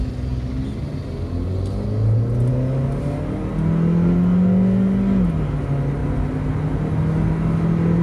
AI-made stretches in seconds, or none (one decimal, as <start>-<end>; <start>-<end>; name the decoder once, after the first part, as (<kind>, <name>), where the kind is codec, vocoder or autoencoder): none